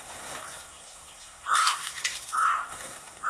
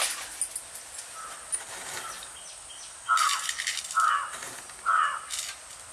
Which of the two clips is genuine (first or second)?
second